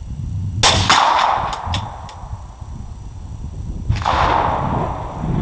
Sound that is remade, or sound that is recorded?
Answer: recorded